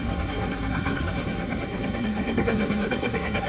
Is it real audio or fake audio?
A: fake